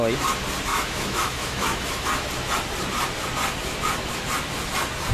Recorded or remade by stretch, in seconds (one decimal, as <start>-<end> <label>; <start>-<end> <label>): 0.0-0.7 recorded; 0.7-2.3 remade; 2.3-5.1 recorded

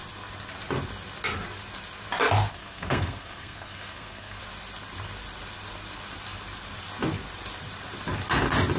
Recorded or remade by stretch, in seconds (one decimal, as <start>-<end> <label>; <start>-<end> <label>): 0.0-2.5 recorded; 2.5-4.4 remade; 4.4-8.8 recorded